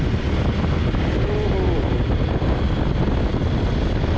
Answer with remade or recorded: recorded